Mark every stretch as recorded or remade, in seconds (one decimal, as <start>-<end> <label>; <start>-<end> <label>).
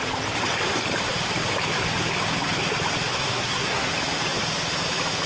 0.0-3.1 recorded; 3.1-3.9 remade; 3.9-5.3 recorded